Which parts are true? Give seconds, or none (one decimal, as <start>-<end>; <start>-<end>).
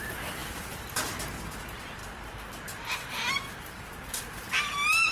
0.0-5.1